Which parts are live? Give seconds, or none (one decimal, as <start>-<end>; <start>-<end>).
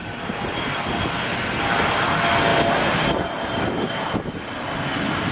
0.9-2.5; 4.3-5.3